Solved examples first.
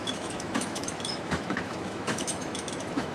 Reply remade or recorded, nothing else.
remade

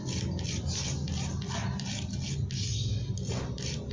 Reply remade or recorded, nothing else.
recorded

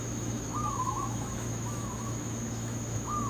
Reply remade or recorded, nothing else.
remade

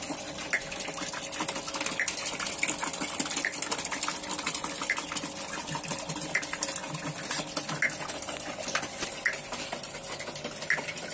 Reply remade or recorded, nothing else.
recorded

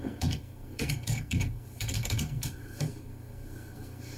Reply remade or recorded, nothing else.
remade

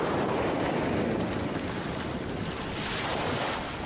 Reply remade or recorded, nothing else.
recorded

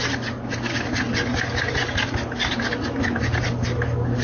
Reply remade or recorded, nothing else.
recorded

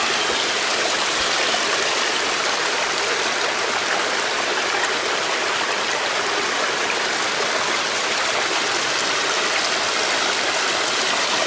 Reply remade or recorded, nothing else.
recorded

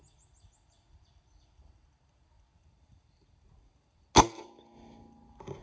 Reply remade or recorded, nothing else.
recorded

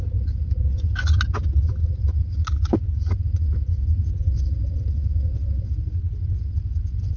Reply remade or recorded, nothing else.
recorded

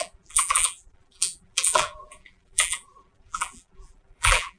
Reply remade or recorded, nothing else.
remade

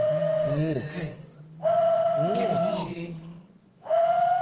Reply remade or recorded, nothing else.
remade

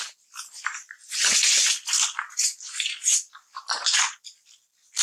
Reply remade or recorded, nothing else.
recorded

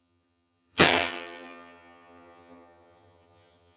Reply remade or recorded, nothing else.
remade